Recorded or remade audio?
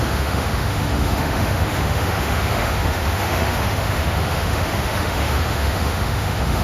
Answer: remade